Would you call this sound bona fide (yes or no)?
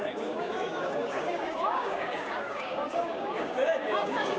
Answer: no